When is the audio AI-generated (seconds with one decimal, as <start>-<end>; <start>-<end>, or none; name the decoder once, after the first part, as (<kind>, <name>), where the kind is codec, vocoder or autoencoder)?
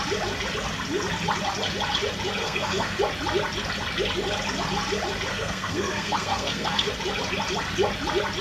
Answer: 2.4-3.0 (codec, SNAC); 5.3-6.9